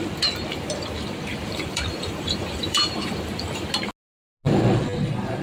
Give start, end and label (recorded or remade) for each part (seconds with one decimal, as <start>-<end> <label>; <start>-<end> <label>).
0.0-1.3 recorded; 1.3-3.7 remade; 3.7-5.4 recorded